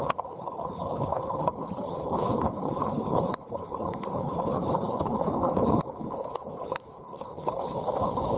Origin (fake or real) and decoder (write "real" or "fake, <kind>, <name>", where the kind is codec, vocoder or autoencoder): fake, codec, HILCodec